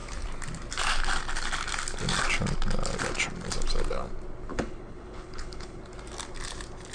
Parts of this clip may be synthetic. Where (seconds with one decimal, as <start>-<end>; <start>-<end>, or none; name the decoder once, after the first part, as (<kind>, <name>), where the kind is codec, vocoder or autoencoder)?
4.5-5.8 (codec, HILCodec)